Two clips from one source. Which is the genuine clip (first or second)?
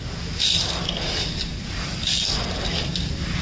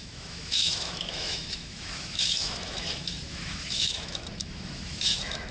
first